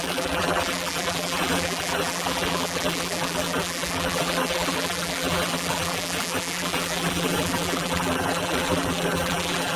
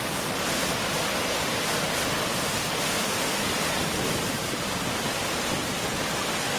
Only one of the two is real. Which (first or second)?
second